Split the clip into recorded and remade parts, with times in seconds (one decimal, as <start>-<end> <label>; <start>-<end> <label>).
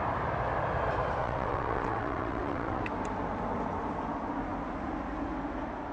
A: 0.0-1.2 recorded; 1.2-2.8 remade; 2.8-5.9 recorded